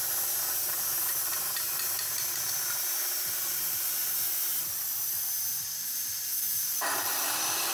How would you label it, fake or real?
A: fake